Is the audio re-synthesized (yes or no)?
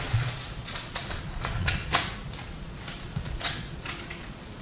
yes